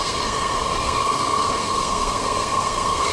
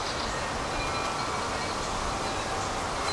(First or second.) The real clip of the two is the second